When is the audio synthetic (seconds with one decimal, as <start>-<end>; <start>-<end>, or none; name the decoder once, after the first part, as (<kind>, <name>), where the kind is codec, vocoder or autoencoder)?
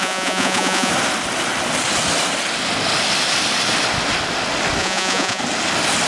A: 0.0-0.9 (vocoder, Vocos); 4.8-5.4